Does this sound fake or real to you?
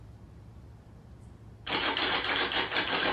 fake